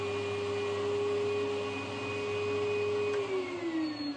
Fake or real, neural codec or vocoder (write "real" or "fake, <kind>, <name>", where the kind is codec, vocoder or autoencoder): real